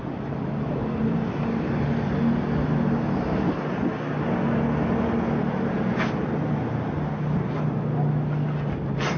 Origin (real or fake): real